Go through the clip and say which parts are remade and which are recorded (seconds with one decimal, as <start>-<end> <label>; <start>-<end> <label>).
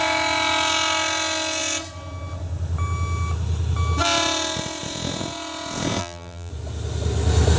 0.0-6.0 recorded; 6.0-6.5 remade; 6.5-7.6 recorded